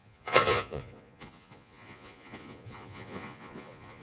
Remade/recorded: remade